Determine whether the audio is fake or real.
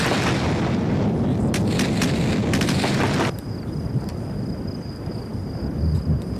real